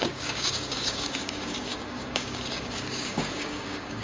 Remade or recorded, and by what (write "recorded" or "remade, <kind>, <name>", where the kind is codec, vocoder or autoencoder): remade, codec, DAC